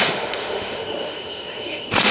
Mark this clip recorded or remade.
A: remade